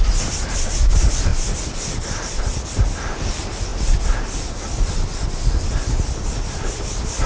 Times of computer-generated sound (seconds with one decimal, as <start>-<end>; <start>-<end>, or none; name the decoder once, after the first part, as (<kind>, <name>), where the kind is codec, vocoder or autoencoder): 0.0-1.3 (vocoder, BigVGAN v2); 2.4-3.7; 5.6-7.3